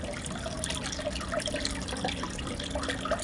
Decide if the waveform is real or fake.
real